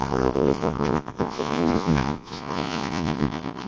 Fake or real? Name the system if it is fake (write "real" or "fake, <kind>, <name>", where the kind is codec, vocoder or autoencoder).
fake, vocoder, Vocos